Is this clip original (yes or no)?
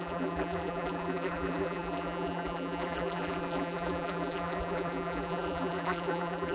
no